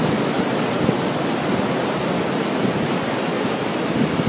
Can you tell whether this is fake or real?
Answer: real